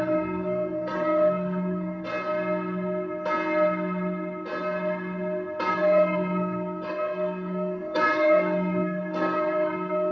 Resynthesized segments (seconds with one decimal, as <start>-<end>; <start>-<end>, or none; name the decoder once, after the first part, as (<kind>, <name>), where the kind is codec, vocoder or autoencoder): 0.0-2.1 (codec, SNAC); 5.7-10.1